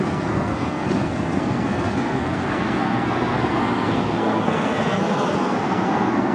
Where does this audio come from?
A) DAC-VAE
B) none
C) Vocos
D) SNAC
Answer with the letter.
D